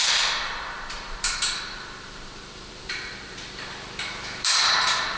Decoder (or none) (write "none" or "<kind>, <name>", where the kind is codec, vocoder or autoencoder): vocoder, BigVGAN v2